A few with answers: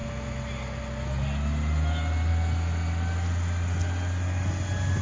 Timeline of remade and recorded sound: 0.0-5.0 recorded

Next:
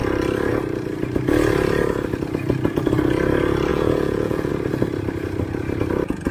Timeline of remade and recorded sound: 0.0-3.7 recorded; 3.7-4.5 remade; 4.5-6.3 recorded

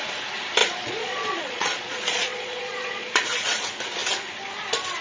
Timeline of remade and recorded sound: 0.0-0.6 recorded; 0.6-3.6 remade; 3.6-5.0 recorded

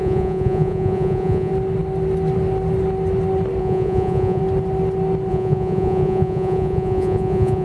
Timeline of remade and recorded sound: 0.0-1.5 remade; 1.5-3.6 recorded; 3.6-4.4 remade; 4.4-5.3 recorded; 5.3-7.6 remade

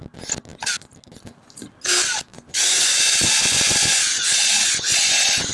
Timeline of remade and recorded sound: 0.0-2.3 recorded; 2.3-5.5 remade

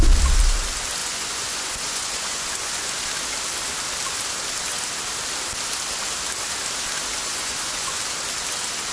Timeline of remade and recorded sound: 0.0-1.0 recorded; 1.0-3.0 remade; 3.0-7.2 recorded; 7.2-8.0 remade; 8.0-8.9 recorded